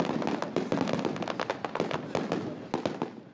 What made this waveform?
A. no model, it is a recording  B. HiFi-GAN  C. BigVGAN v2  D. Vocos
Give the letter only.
A